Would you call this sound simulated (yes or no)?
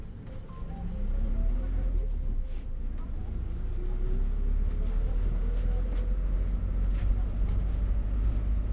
no